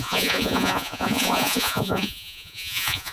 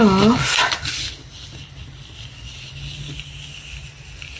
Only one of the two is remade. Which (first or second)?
first